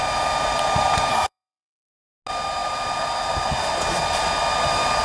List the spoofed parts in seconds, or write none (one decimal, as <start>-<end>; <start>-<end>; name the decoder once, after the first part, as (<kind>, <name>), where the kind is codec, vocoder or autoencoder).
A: 1.1-1.9 (codec, SNAC)

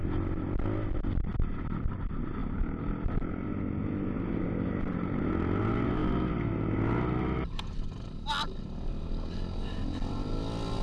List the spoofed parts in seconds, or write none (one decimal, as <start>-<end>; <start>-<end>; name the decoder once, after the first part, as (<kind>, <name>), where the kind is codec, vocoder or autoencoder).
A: none

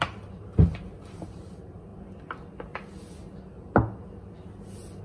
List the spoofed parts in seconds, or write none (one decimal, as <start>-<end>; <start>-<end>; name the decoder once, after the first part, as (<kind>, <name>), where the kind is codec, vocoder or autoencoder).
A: 0.0-1.9 (vocoder, BigVGAN v2)

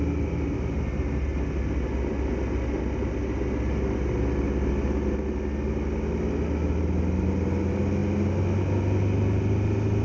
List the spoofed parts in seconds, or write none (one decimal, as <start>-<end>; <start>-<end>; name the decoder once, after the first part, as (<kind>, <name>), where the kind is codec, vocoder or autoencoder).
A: none

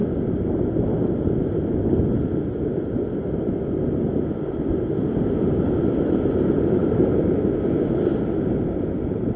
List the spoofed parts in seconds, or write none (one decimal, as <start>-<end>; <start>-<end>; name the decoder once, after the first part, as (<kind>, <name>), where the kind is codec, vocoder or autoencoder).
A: 3.2-6.8 (vocoder, BigVGAN v2); 8.1-9.4

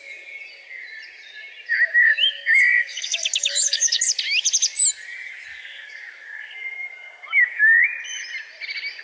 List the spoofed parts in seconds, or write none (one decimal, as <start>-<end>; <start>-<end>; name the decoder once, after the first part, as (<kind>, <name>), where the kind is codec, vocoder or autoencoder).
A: 1.9-4.1 (codec, DAC); 5.5-7.8